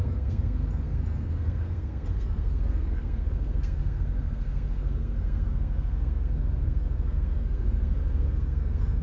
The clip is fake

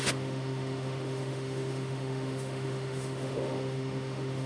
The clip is fake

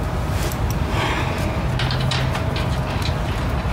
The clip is real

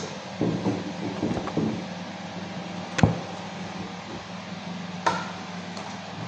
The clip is real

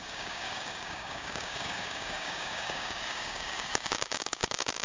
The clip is fake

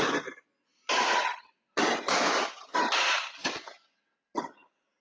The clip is real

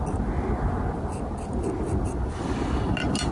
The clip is real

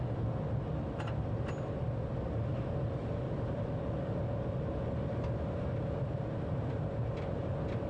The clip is real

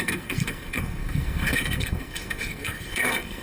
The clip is fake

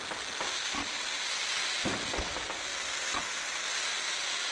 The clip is real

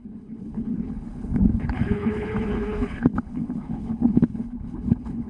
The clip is fake